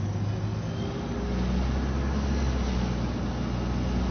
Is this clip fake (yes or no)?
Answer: no